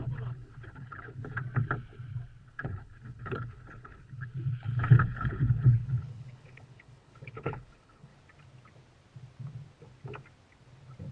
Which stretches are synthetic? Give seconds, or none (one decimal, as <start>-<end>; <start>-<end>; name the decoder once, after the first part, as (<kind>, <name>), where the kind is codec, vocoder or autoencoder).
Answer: 0.0-1.4 (codec, HILCodec); 2.5-8.1